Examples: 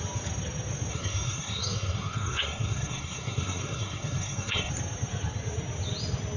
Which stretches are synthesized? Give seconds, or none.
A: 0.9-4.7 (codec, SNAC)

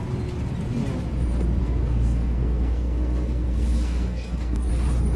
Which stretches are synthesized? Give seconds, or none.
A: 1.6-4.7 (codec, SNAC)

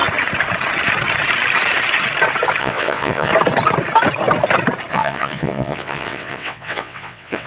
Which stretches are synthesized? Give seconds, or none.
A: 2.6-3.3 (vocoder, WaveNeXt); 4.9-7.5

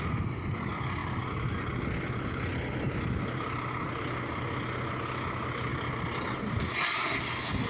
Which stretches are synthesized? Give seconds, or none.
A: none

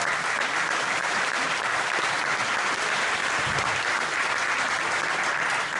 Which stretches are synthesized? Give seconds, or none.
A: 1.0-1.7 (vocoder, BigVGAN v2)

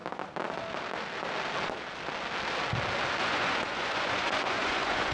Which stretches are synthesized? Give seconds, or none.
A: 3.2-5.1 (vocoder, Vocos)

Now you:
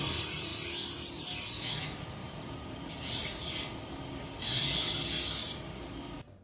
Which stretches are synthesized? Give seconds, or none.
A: 2.2-2.9 (vocoder, BigVGAN v2); 5.4-6.4